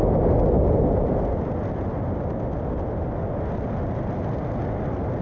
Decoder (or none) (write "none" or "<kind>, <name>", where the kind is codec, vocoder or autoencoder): none